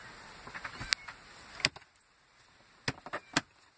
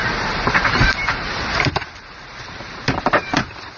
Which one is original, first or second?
first